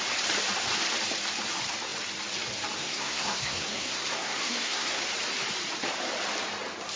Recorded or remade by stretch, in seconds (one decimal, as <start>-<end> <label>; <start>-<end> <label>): 0.0-2.8 recorded; 2.8-5.0 remade; 5.0-7.0 recorded